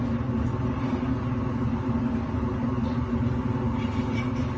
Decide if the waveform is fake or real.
real